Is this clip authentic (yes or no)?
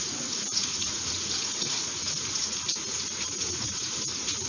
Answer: no